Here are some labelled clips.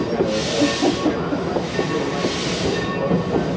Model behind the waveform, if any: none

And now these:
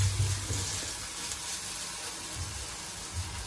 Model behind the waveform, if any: none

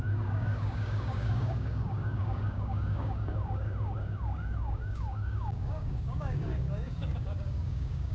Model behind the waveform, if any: codec, DAC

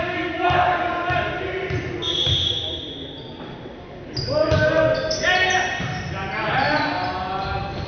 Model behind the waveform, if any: none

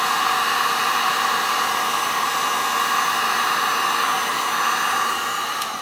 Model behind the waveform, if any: none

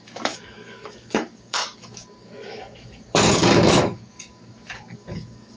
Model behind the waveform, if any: codec, DAC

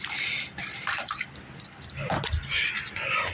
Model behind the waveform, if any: none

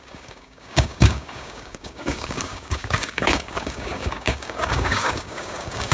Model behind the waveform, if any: codec, DAC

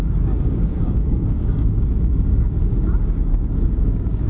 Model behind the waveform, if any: codec, DAC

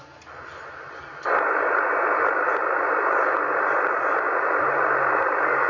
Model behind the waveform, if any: none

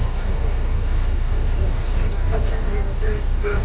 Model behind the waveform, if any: codec, DAC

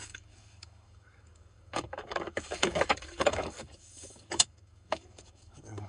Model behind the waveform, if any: codec, DAC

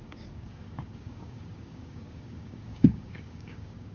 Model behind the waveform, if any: codec, DAC